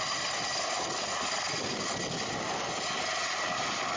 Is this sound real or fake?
real